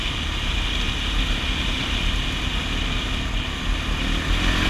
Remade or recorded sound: recorded